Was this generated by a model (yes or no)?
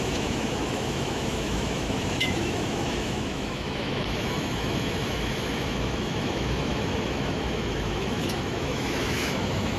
yes